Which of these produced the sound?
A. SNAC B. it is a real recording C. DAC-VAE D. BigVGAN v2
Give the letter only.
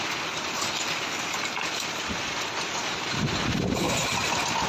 B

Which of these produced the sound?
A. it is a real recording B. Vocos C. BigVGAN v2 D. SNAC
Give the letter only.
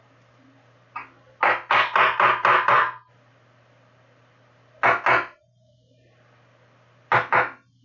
A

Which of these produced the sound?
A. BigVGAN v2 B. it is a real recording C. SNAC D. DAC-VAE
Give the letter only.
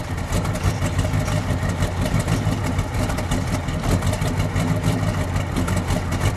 B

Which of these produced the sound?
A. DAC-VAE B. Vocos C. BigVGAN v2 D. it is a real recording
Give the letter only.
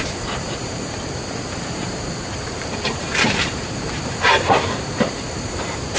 C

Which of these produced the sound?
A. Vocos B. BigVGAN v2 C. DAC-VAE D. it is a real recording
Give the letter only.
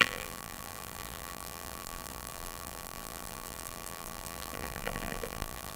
B